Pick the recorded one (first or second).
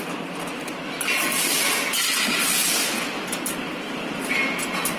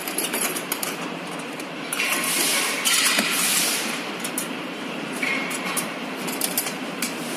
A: first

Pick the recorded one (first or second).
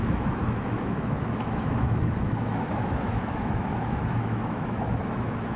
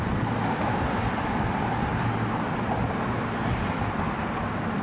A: second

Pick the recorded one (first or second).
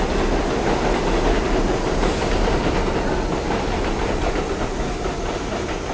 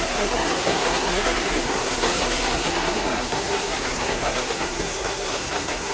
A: first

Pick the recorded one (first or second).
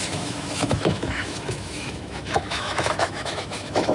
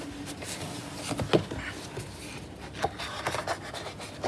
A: second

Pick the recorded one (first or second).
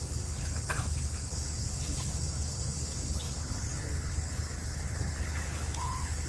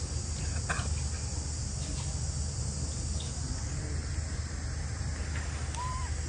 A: second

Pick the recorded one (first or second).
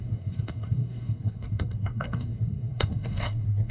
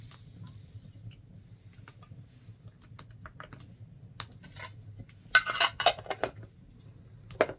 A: second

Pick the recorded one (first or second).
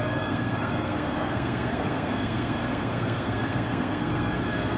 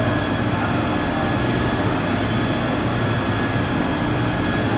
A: second